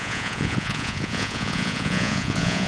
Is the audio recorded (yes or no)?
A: no